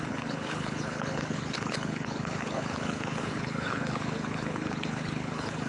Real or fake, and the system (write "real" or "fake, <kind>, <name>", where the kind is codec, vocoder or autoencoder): fake, codec, HILCodec